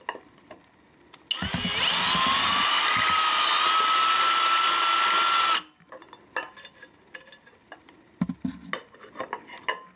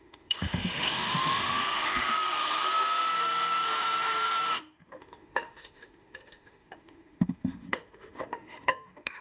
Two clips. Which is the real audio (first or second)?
first